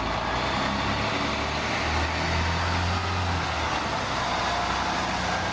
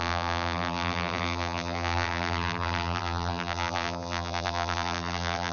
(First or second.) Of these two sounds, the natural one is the first